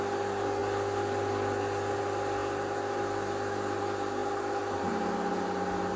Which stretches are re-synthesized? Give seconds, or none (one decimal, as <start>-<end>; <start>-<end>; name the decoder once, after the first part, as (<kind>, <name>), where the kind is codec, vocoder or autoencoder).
none